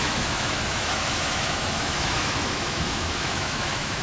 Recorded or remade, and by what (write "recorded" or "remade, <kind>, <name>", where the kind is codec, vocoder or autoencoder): remade, autoencoder, DAC-VAE